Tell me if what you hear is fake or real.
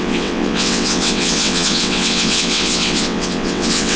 fake